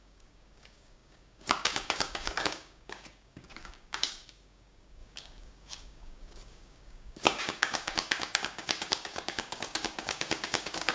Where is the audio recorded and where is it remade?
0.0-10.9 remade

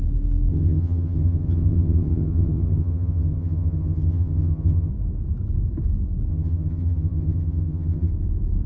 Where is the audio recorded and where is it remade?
0.0-0.5 recorded; 0.5-4.9 remade; 4.9-6.3 recorded; 6.3-8.1 remade; 8.1-8.7 recorded

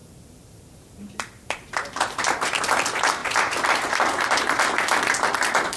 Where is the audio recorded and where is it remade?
0.0-2.6 remade; 2.6-3.2 recorded; 3.2-4.4 remade; 4.4-5.8 recorded

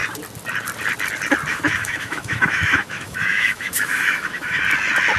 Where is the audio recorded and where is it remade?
0.0-1.5 recorded; 1.5-4.6 remade; 4.6-5.2 recorded